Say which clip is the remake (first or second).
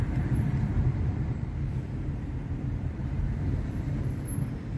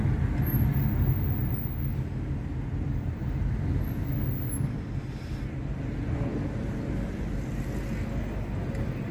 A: first